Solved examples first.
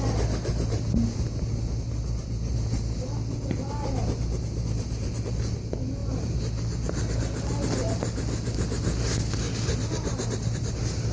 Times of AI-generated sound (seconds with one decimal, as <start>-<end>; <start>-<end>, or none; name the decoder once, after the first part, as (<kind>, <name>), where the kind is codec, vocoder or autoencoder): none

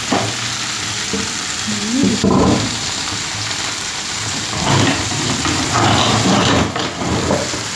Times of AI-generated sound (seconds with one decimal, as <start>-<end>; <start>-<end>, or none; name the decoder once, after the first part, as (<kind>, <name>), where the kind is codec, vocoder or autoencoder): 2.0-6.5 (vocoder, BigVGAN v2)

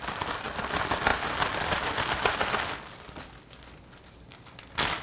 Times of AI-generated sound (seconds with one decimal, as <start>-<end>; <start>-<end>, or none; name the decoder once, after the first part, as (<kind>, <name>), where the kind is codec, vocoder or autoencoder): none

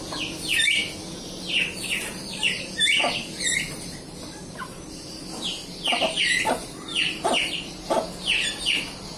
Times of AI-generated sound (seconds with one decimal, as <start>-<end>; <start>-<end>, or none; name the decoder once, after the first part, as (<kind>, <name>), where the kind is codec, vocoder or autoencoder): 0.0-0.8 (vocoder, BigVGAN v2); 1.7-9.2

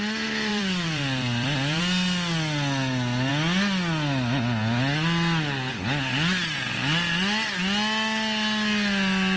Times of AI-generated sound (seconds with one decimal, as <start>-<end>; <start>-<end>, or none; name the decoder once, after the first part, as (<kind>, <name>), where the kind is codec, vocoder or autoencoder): 0.5-1.8 (vocoder, BigVGAN v2)

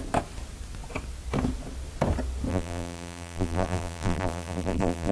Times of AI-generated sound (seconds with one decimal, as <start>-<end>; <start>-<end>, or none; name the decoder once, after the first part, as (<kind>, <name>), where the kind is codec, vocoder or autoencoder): 2.5-5.1 (vocoder, BigVGAN v2)

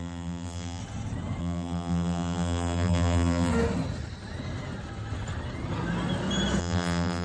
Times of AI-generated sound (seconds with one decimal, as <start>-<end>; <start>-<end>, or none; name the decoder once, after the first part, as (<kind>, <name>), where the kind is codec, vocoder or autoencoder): 0.0-0.8 (vocoder, BigVGAN v2); 1.4-3.5; 6.6-7.2